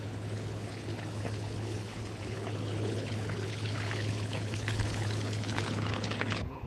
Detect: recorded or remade remade